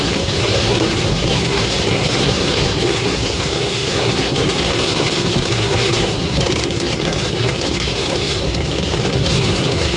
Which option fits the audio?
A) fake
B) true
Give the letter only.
A